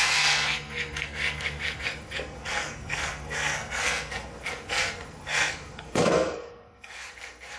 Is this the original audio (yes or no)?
no